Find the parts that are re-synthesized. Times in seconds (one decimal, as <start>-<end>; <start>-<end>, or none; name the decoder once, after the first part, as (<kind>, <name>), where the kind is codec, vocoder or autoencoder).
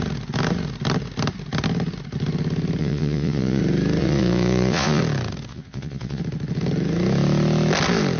2.8-3.6 (vocoder, Vocos); 4.0-5.0; 5.5-6.2